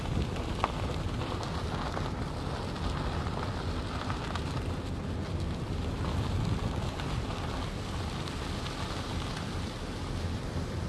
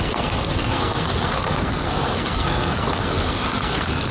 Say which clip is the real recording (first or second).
first